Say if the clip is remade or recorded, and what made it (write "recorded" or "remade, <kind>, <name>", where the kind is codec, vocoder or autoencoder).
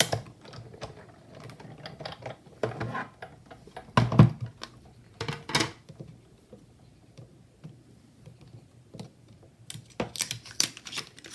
recorded